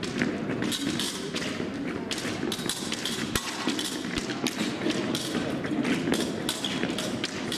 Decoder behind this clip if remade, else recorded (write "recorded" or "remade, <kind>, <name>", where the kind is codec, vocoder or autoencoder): recorded